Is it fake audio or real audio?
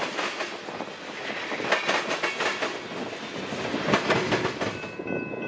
real